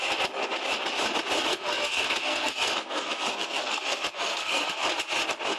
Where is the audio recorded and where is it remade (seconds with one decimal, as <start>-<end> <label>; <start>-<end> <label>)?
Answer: 0.0-1.5 recorded; 1.5-4.9 remade; 4.9-5.6 recorded